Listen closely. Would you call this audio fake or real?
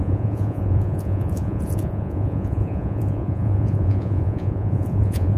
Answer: fake